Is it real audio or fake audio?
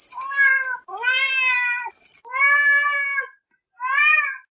real